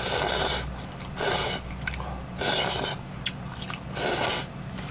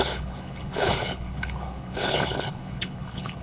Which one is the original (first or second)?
first